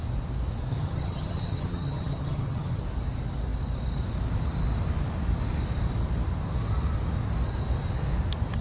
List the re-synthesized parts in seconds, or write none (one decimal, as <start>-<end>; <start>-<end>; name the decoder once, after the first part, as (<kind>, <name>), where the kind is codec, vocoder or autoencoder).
0.7-2.8 (vocoder, HiFi-GAN)